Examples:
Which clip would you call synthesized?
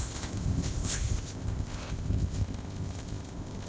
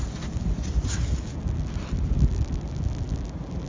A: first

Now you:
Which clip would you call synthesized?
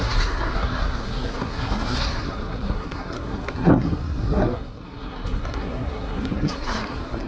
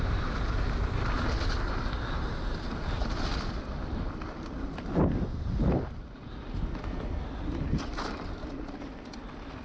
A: first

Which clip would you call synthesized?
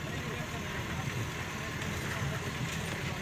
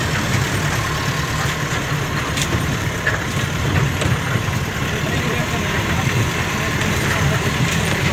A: second